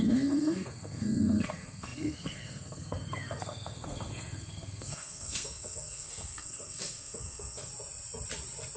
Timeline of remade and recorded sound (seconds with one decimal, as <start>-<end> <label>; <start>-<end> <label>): 0.0-7.7 remade; 7.7-8.8 recorded